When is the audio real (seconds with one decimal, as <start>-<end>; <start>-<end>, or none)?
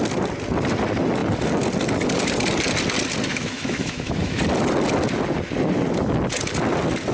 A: 0.0-3.3; 4.4-7.1